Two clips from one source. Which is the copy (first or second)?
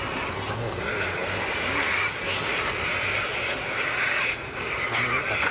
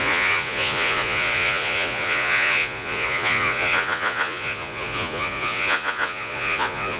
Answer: second